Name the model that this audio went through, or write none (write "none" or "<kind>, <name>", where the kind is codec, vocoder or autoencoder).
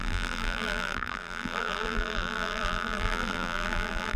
vocoder, BigVGAN v2